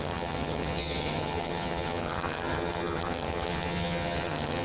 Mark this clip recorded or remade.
remade